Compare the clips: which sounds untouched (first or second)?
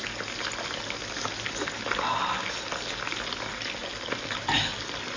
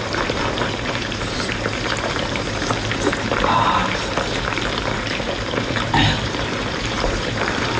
first